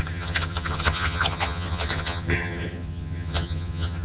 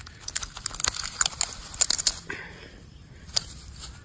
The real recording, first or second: second